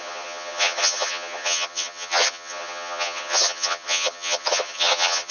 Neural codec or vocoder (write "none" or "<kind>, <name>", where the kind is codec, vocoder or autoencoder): vocoder, HiFi-GAN